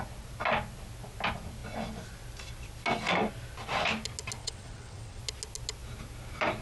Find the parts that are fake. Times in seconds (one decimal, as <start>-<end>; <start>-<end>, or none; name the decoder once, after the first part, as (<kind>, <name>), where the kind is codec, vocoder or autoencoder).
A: 4.4-5.2 (vocoder, WaveNeXt)